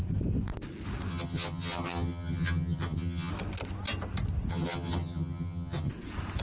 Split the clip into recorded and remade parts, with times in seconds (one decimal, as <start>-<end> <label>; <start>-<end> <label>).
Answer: 0.0-1.1 recorded; 1.1-3.3 remade; 3.3-4.5 recorded; 4.5-5.9 remade; 5.9-6.4 recorded